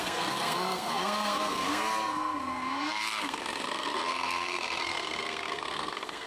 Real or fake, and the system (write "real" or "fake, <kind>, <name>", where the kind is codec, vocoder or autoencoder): fake, codec, SNAC